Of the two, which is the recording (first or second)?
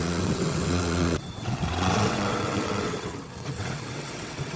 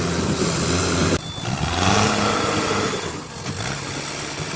second